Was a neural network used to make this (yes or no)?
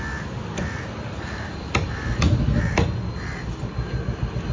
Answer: no